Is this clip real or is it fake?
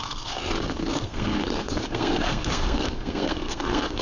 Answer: fake